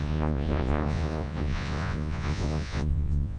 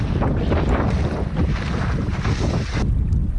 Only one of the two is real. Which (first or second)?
second